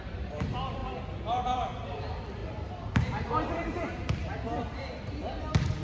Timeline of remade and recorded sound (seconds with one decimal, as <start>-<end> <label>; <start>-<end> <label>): 0.0-0.8 remade; 0.8-1.4 recorded; 1.4-5.8 remade